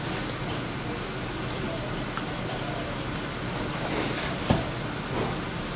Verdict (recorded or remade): recorded